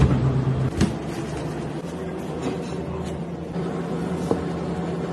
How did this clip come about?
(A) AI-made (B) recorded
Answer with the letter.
B